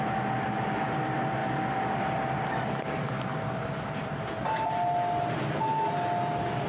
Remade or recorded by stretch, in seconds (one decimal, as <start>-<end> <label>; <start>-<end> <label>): 0.0-6.7 recorded